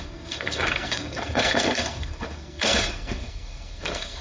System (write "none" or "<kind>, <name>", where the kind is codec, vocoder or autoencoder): codec, SNAC